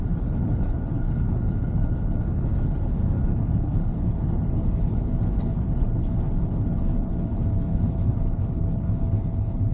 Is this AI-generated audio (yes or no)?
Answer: yes